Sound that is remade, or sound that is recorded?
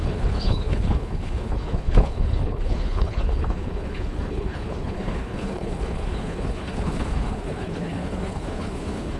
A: remade